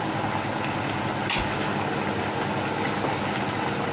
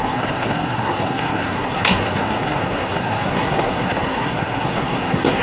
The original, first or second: first